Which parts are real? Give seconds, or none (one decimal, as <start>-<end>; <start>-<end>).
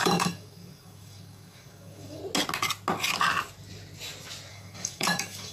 2.2-4.5